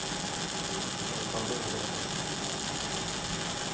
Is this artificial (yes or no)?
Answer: no